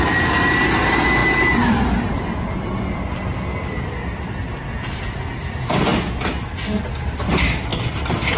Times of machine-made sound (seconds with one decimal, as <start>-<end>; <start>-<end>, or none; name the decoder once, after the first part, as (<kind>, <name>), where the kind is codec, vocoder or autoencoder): none